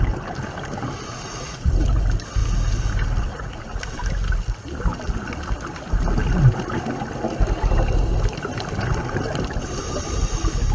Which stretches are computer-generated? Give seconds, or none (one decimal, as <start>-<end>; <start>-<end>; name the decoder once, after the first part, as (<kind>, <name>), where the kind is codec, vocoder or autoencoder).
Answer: 1.1-1.7 (vocoder, Vocos); 3.3-3.8